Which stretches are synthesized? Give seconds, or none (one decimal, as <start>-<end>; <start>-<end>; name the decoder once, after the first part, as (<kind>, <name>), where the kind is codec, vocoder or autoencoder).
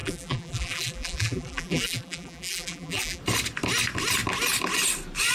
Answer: 0.0-3.2 (vocoder, BigVGAN v2)